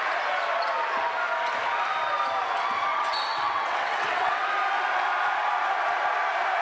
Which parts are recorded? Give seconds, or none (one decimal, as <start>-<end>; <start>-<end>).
0.0-2.9; 4.4-6.6